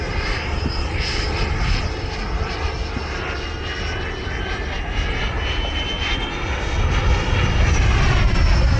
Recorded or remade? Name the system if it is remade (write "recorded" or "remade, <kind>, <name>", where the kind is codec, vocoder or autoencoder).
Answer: recorded